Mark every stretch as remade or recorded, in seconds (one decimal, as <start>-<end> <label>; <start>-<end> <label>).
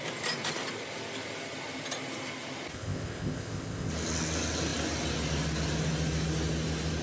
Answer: 0.0-2.7 recorded; 2.7-3.9 remade; 3.9-7.0 recorded